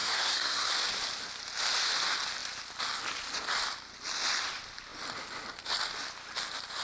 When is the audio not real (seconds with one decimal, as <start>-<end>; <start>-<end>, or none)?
0.0-0.7